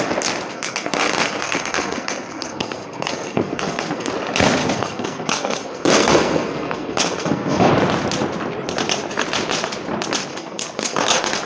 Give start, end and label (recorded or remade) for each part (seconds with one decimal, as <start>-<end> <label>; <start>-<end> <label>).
0.0-0.5 recorded; 0.5-4.1 remade; 4.1-4.6 recorded; 4.6-7.7 remade; 7.7-10.3 recorded; 10.3-11.4 remade